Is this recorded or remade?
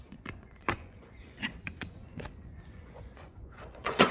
remade